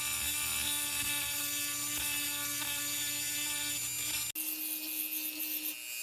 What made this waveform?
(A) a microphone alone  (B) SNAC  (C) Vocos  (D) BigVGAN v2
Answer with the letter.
A